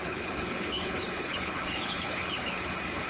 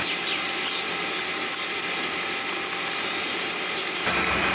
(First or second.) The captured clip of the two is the second